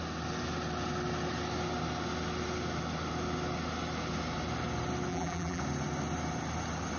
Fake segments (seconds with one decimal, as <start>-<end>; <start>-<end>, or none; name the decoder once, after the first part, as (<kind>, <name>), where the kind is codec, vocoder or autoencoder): 5.1-5.6 (vocoder, BigVGAN v2)